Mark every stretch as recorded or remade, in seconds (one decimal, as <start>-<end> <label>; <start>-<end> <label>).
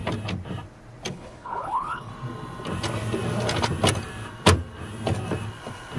0.0-1.1 recorded; 1.1-2.1 remade; 2.1-6.0 recorded